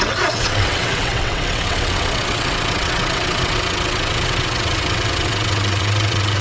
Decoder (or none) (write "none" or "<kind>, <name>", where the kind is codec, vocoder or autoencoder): vocoder, WaveNeXt